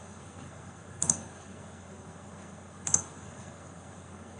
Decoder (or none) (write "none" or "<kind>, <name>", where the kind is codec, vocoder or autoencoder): codec, SNAC